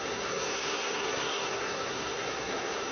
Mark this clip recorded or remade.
remade